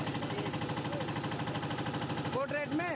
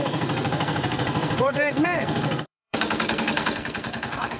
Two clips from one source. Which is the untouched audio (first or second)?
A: first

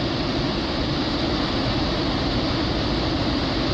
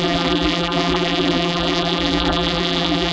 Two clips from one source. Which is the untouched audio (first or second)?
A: first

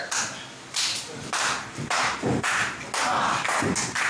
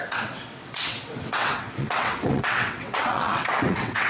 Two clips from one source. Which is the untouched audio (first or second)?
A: first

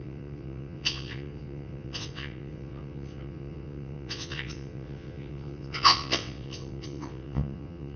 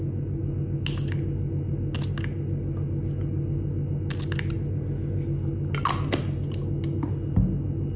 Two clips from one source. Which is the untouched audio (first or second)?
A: second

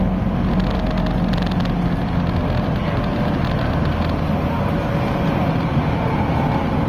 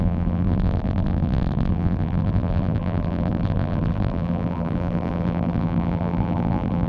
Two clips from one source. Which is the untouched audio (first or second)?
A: first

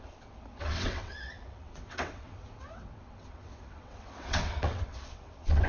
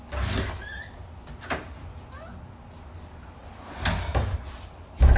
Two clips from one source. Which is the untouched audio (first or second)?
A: second